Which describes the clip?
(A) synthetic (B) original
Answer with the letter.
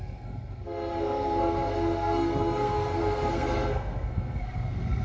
A